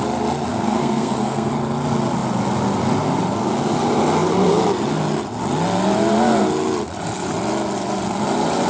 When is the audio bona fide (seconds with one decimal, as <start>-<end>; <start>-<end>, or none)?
0.0-0.5; 1.5-8.7